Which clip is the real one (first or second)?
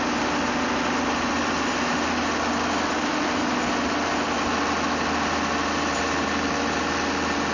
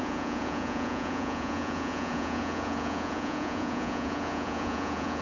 first